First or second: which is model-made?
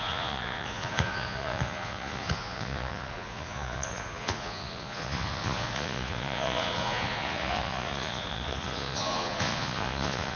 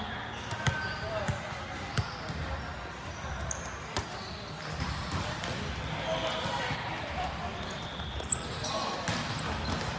first